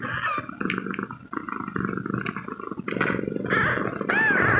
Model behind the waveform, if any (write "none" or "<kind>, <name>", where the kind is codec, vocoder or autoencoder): none